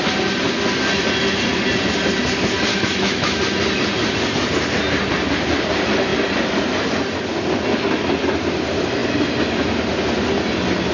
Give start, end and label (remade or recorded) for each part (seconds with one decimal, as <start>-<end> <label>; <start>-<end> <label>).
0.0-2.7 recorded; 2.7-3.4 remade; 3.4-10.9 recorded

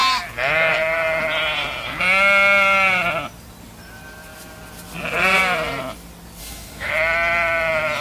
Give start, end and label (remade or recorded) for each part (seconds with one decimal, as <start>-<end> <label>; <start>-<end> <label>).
0.0-6.4 recorded; 6.4-6.9 remade; 6.9-8.0 recorded

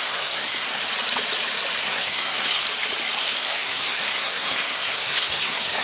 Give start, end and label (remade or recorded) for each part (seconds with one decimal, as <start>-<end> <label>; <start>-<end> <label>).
0.0-0.8 remade; 0.8-1.8 recorded; 1.8-2.6 remade; 2.6-3.2 recorded; 3.2-5.8 remade

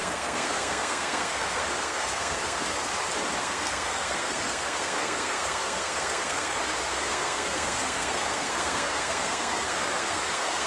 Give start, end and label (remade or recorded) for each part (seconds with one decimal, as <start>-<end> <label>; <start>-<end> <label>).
0.0-2.9 remade; 2.9-3.4 recorded; 3.4-10.7 remade

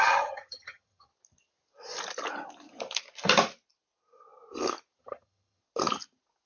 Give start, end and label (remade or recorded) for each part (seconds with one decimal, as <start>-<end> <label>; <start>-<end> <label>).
0.0-1.1 remade; 1.1-5.0 recorded; 5.0-5.6 remade; 5.6-6.5 recorded